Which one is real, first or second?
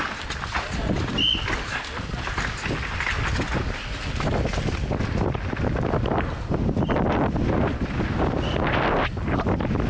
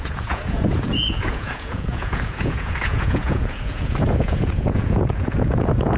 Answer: first